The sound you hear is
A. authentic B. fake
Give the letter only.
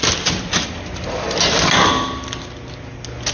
A